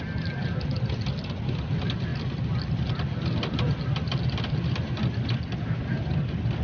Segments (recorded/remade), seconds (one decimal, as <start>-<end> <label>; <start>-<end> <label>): 0.0-6.6 recorded